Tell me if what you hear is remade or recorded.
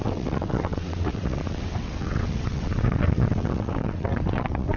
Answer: remade